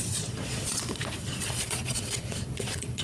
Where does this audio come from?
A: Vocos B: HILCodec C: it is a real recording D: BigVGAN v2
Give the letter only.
A